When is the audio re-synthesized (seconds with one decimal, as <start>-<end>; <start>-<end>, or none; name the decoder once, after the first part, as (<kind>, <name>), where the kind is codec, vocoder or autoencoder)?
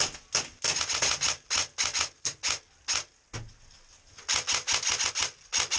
none